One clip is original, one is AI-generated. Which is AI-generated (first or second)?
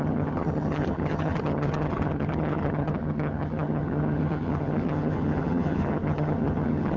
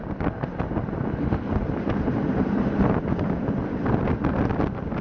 first